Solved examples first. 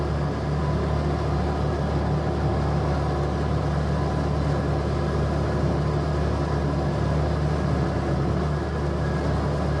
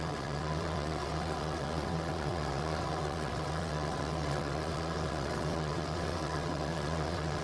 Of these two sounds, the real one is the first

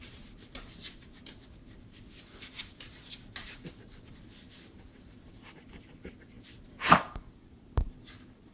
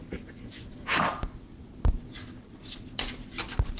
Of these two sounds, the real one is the second